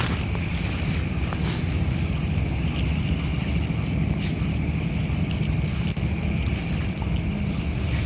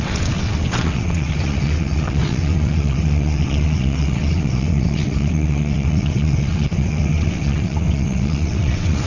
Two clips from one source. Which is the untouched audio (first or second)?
first